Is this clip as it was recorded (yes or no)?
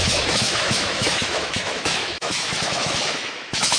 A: no